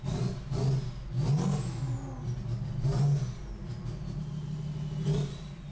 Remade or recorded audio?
recorded